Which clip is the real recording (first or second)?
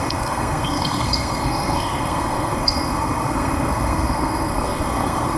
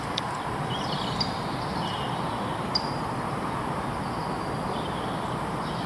second